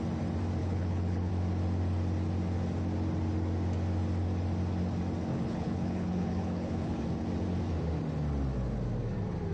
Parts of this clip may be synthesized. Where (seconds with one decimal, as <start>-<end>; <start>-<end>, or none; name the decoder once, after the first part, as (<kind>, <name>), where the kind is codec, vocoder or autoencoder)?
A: 0.6-1.3 (codec, HILCodec); 5.3-7.0

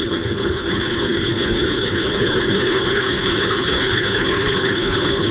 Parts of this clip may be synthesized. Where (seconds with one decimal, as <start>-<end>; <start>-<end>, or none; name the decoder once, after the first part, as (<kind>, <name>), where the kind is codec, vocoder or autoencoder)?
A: 0.0-5.3 (codec, HILCodec)

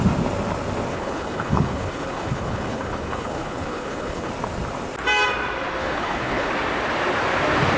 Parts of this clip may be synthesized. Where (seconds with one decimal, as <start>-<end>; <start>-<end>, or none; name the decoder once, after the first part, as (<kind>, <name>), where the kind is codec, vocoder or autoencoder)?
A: 0.9-4.3 (codec, HILCodec); 5.8-6.5

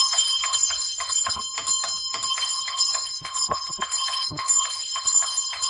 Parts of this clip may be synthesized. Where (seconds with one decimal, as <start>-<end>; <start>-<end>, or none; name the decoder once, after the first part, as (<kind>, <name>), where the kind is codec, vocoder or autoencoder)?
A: 0.0-1.4 (codec, HILCodec); 2.3-5.7

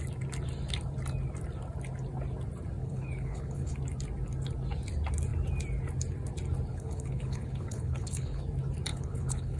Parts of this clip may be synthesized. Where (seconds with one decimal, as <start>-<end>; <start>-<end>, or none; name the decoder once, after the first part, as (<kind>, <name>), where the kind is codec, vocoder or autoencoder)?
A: 2.8-3.8 (codec, HILCodec); 6.7-8.4; 8.9-9.6